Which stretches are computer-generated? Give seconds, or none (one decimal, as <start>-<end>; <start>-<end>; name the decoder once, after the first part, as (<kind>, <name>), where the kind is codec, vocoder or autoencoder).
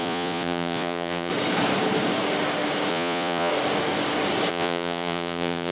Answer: 0.0-1.3 (vocoder, Vocos); 2.9-3.5; 4.5-5.7